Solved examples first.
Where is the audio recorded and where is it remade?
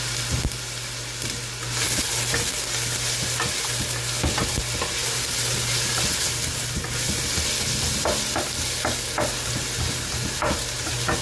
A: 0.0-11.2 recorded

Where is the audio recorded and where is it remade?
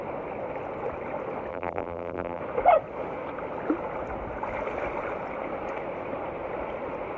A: 0.0-1.5 recorded; 1.5-2.4 remade; 2.4-7.2 recorded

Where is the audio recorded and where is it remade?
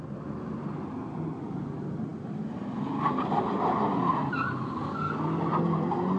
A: 0.0-6.2 recorded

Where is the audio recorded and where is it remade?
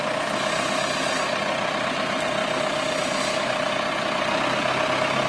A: 0.0-5.3 recorded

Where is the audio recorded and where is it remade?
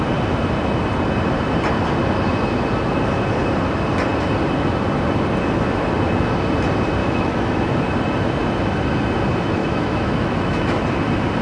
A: 0.0-7.0 recorded; 7.0-7.6 remade; 7.6-9.6 recorded; 9.6-10.8 remade; 10.8-11.4 recorded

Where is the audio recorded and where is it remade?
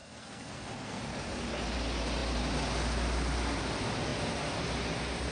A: 0.0-1.0 remade; 1.0-5.3 recorded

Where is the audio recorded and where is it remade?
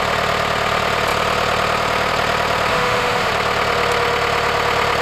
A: 0.0-2.7 recorded; 2.7-3.3 remade; 3.3-5.0 recorded